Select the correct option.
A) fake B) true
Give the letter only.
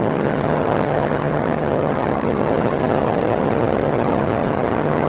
A